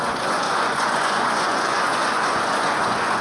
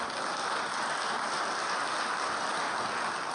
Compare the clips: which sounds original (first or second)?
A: second